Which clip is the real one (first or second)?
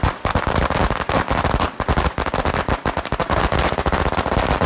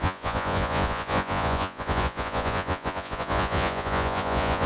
first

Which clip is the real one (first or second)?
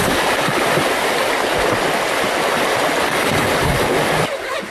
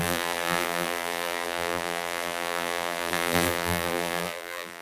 first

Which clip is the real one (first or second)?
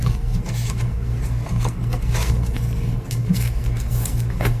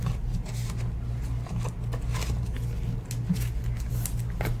second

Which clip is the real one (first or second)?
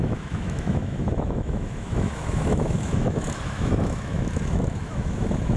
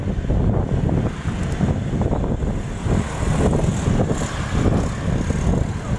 second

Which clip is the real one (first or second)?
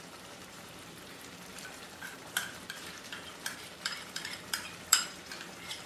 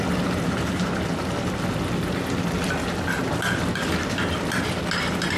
second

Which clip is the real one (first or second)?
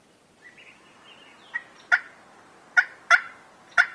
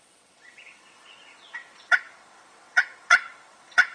first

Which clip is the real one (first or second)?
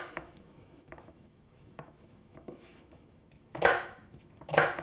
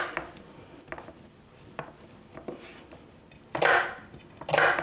second